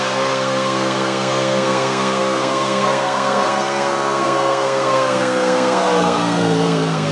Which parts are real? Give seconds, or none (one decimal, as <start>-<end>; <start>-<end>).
none